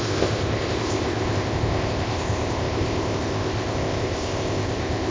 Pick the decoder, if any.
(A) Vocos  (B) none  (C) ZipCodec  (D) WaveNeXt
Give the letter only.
C